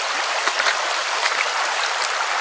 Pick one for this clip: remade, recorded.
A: recorded